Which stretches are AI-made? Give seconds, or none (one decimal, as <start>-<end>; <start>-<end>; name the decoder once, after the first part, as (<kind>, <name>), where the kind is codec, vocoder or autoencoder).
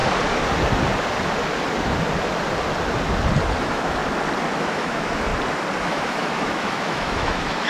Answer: 3.6-4.0 (autoencoder, DAC-VAE); 4.6-5.3; 5.8-7.7